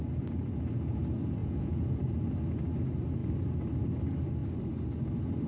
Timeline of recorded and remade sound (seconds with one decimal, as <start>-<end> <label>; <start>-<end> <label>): 0.0-1.4 recorded; 1.4-2.0 remade; 2.0-5.5 recorded